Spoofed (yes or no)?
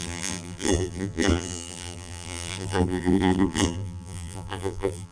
yes